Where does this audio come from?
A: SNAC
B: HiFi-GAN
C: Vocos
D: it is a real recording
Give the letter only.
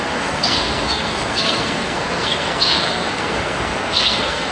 A